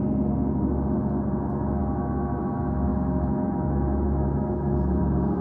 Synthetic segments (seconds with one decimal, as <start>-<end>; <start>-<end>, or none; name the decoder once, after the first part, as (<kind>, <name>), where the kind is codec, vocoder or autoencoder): 1.8-2.4 (autoencoder, DAC-VAE); 2.9-5.0